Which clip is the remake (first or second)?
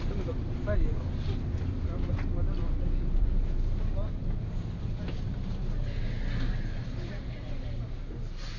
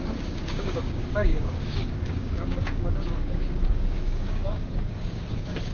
second